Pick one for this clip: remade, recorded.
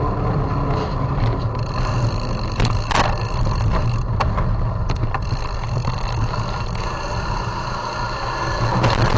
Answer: recorded